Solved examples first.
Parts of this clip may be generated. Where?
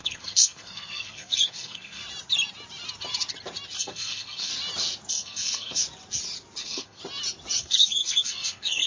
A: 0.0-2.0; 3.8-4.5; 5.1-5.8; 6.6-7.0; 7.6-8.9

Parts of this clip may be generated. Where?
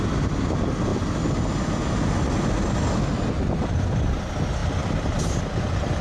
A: none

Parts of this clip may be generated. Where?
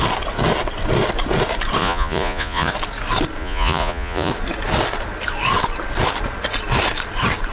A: 1.8-2.7; 3.4-4.3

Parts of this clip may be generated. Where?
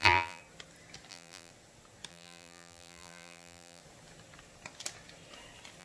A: 0.0-0.4; 1.1-1.5; 2.1-3.8